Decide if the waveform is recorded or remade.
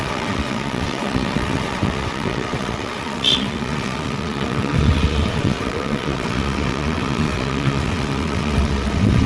remade